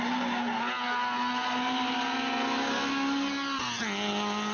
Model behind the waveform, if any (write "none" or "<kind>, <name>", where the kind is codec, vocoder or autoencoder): none